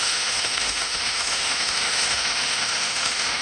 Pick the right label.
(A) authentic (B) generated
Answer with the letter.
B